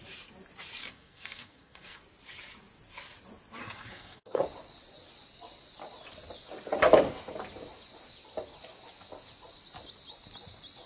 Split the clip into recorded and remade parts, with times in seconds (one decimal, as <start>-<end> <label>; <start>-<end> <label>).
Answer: 0.0-0.8 recorded; 0.8-2.0 remade; 2.0-3.6 recorded; 3.6-4.4 remade; 4.4-10.9 recorded